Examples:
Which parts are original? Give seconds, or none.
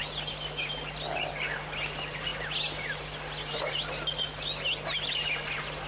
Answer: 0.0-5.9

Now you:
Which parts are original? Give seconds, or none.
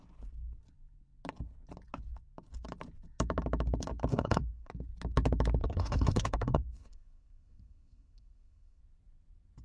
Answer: 0.0-4.1; 4.7-5.6; 8.8-9.6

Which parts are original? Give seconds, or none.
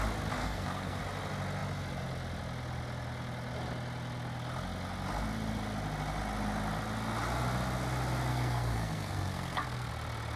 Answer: 0.0-0.4; 1.0-8.3; 9.9-10.4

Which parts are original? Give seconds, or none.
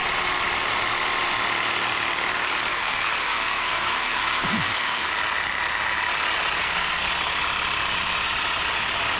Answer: 0.0-2.7; 5.1-6.6; 7.1-9.2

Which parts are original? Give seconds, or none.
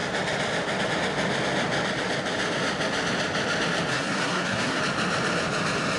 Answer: 0.0-3.9; 4.8-6.0